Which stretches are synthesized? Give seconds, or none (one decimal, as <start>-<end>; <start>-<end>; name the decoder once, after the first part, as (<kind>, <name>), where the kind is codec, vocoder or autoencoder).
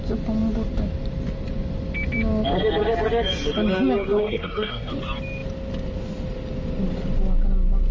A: 4.2-4.9 (codec, SNAC)